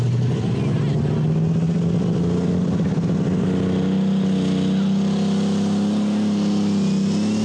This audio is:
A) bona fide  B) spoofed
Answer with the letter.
A